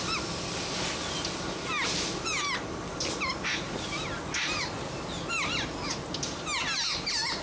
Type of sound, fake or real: real